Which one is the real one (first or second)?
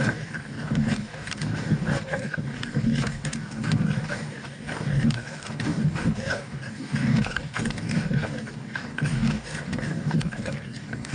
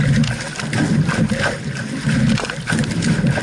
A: second